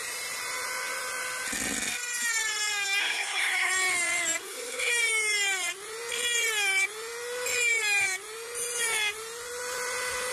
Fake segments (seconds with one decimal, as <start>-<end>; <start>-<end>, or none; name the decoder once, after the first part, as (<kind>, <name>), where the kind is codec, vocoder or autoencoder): 3.0-3.7 (codec, SNAC); 4.4-4.9